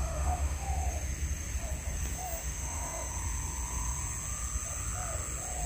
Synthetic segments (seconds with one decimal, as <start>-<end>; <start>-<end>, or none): 0.0-0.9; 2.1-3.1